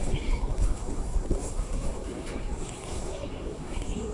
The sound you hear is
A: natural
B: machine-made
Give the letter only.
B